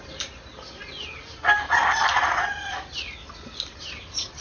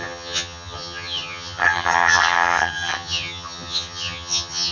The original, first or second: first